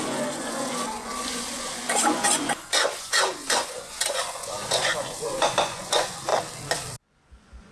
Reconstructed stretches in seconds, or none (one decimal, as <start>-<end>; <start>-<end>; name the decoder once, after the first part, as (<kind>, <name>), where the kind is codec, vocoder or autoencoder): 0.0-6.3 (vocoder, Vocos); 7.0-7.7